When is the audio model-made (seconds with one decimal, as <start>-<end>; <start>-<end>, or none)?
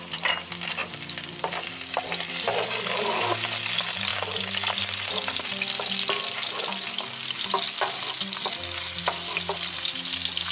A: none